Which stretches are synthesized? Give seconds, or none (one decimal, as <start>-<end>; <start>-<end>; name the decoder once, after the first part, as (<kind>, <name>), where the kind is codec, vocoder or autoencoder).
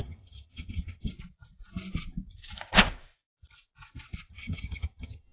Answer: 0.0-1.1 (vocoder, HiFi-GAN); 4.3-5.3